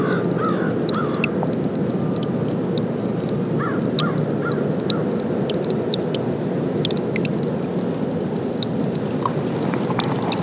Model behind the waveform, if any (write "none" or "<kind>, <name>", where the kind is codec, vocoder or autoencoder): none